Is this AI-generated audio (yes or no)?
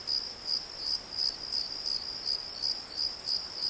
no